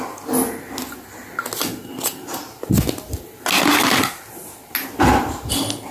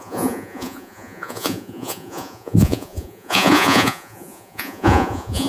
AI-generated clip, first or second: second